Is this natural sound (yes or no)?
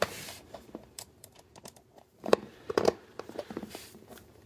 no